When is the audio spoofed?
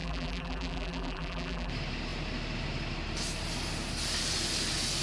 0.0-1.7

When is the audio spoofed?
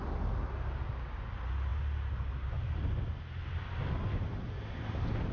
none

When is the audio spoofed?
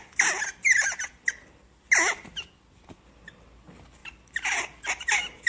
none